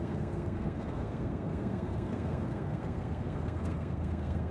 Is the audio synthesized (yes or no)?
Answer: yes